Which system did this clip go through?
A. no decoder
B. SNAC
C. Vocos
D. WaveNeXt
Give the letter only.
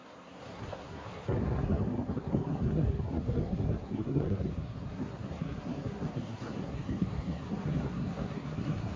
B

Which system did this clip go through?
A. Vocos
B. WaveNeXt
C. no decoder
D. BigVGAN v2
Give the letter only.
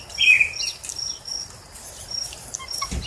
C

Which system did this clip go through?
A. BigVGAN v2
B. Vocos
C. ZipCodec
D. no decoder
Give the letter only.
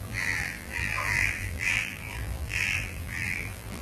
A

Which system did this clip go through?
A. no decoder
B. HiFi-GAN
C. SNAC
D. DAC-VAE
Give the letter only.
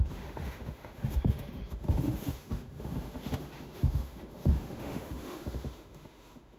D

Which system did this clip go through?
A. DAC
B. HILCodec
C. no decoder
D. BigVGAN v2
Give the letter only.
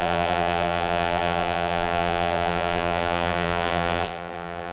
D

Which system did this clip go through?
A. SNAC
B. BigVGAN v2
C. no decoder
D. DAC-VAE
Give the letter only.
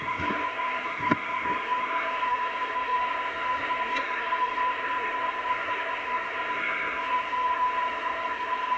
A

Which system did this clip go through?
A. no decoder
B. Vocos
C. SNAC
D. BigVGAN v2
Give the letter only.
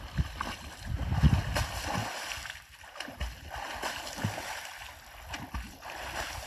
A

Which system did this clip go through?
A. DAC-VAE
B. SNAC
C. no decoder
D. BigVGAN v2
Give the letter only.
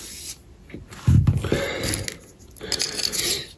C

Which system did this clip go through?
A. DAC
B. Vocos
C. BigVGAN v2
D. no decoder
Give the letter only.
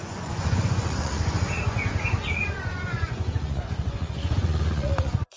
B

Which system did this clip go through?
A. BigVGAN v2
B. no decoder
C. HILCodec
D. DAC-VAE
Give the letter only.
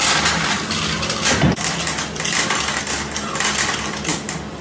B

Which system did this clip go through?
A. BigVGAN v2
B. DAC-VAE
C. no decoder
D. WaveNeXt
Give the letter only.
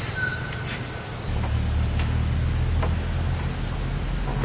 C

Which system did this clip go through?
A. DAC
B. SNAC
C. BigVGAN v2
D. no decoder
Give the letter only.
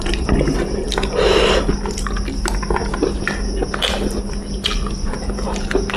D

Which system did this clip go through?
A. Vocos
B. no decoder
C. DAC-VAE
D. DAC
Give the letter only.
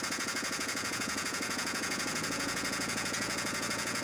A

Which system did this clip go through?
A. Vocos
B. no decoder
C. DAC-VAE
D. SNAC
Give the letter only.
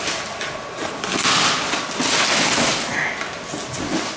B